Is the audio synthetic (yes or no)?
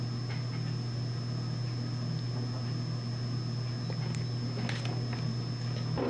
no